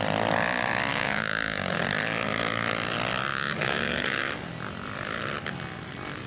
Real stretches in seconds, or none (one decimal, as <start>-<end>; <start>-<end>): 0.0-0.9; 1.8-3.3; 4.3-6.3